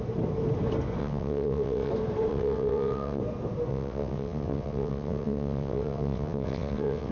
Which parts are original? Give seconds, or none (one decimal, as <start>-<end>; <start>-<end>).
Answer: 0.0-1.0; 1.9-2.3; 3.2-3.7